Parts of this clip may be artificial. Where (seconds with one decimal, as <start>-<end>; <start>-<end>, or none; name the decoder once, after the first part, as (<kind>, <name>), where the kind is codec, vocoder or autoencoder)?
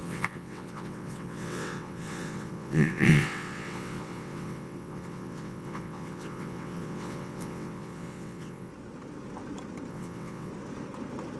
0.0-8.7 (vocoder, WaveNeXt); 9.9-10.5